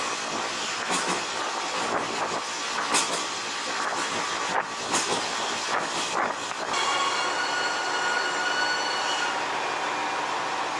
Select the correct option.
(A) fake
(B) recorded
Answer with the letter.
B